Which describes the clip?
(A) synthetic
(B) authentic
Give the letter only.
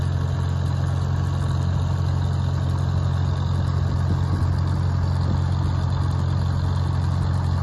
B